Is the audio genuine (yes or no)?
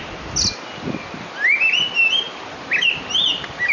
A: yes